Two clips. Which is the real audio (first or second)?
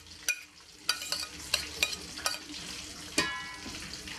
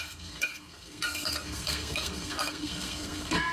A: first